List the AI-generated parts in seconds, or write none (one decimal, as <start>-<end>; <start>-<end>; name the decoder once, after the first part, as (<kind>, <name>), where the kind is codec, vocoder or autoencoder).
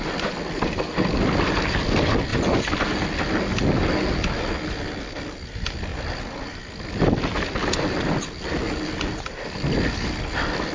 none